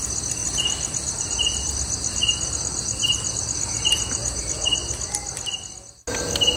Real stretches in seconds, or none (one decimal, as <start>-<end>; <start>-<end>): 0.0-0.4; 4.4-6.6